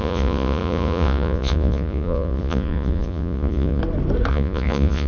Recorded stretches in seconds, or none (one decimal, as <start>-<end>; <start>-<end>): 3.8-4.3